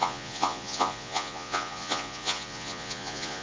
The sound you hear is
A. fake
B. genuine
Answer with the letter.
A